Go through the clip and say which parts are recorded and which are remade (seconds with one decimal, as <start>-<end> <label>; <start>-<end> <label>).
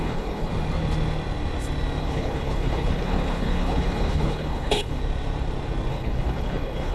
0.0-0.5 remade; 0.5-2.0 recorded; 2.0-5.0 remade; 5.0-5.9 recorded; 5.9-6.9 remade